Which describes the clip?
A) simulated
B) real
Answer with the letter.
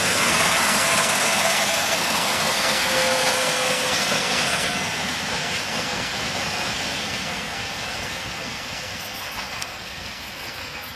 A